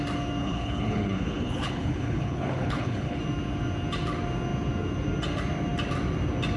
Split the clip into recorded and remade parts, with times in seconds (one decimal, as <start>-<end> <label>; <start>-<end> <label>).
0.0-0.4 recorded; 0.4-3.2 remade; 3.2-6.6 recorded